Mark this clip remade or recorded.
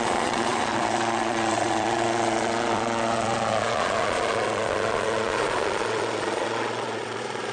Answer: remade